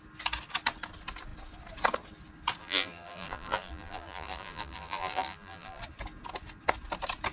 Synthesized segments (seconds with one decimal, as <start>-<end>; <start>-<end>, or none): 2.6-5.8